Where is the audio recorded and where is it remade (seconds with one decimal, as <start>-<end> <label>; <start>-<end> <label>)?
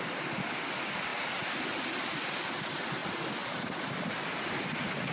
0.0-5.1 recorded